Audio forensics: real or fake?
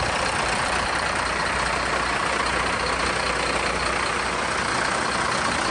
real